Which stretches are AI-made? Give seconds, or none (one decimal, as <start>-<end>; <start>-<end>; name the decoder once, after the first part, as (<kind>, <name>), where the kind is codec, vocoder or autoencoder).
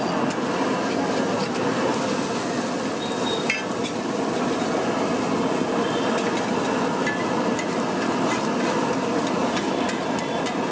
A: none